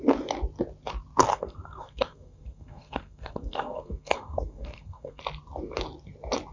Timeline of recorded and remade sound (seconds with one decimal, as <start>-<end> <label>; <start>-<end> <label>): 0.0-1.3 recorded; 1.3-5.2 remade; 5.2-6.5 recorded

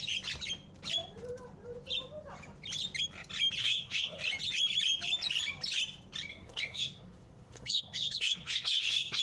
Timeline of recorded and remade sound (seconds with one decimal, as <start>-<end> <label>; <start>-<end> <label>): 0.0-3.6 recorded; 3.6-4.2 remade; 4.2-6.3 recorded; 6.3-9.2 remade

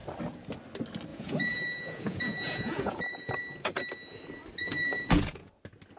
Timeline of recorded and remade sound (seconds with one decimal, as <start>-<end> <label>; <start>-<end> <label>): 0.0-1.1 recorded; 1.1-3.4 remade; 3.4-4.6 recorded; 4.6-5.5 remade; 5.5-6.0 recorded

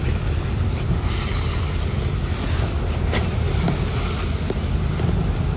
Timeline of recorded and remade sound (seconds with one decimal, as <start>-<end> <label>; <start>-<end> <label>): 0.0-5.6 recorded

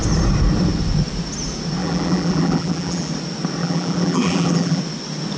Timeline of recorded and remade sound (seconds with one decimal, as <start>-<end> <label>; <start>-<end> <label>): 0.0-1.8 recorded; 1.8-3.1 remade; 3.1-3.6 recorded; 3.6-4.8 remade; 4.8-5.4 recorded